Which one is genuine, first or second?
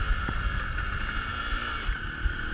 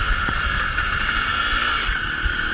first